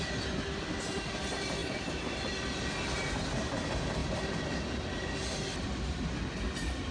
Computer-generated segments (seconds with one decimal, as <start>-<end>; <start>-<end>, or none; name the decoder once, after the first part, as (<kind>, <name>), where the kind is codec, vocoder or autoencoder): none